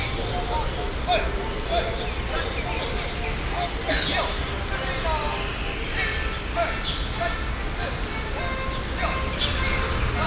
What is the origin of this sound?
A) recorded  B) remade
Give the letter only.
A